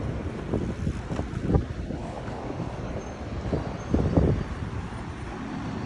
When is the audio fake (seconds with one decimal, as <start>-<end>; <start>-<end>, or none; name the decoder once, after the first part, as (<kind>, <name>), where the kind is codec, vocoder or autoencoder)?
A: 2.0-3.0 (codec, DAC)